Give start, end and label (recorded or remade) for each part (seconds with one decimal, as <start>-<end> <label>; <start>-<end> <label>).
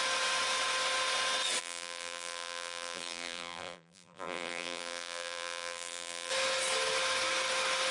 0.0-1.6 recorded; 1.6-6.3 remade; 6.3-7.9 recorded